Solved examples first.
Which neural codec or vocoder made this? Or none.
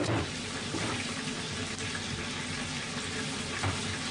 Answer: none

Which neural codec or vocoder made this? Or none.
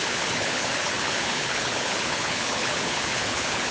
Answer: codec, HILCodec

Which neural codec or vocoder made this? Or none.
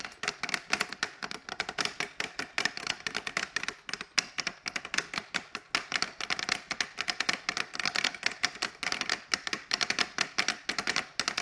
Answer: none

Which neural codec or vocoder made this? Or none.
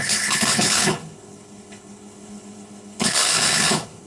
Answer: codec, HILCodec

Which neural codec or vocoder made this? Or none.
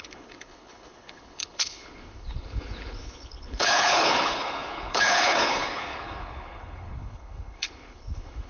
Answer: codec, HILCodec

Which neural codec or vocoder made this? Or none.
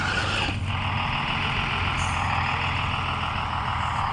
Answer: none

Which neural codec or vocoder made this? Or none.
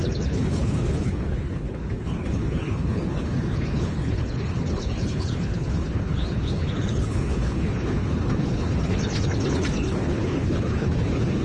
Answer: codec, HILCodec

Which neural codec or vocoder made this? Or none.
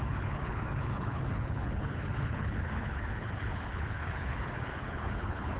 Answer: codec, HILCodec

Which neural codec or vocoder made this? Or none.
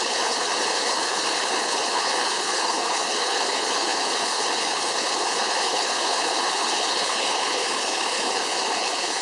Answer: codec, HILCodec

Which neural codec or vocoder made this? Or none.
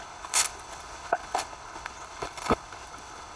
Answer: codec, HILCodec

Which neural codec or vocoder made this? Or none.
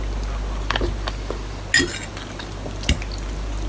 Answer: none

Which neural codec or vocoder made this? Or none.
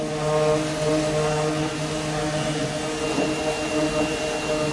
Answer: none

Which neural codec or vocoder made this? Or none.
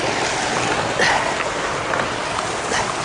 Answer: none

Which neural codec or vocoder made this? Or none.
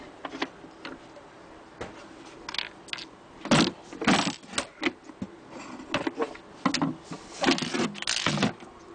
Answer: none